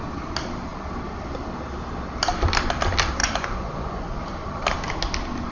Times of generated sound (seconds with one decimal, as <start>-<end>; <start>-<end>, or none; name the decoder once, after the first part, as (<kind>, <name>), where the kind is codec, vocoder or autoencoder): 3.2-4.2 (vocoder, Vocos)